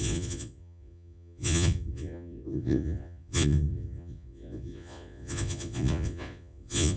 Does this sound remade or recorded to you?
remade